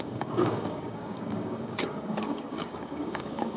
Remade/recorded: remade